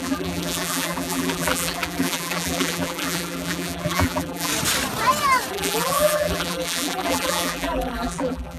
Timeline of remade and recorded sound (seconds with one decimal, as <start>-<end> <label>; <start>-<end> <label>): 0.0-4.5 remade; 4.5-5.5 recorded; 5.5-8.6 remade